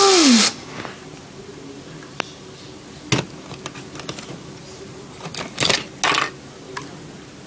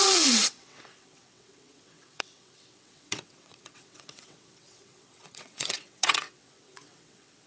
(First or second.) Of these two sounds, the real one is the first